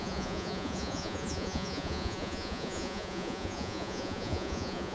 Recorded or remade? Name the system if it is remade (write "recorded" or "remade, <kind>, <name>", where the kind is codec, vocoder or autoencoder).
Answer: remade, vocoder, Vocos